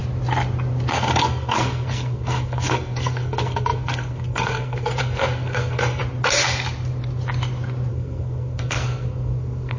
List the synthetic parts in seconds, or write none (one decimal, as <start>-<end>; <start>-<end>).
0.9-6.0; 7.9-9.8